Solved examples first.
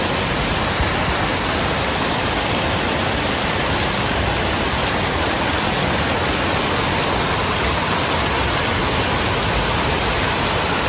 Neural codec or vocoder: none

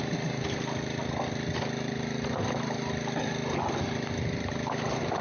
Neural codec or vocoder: none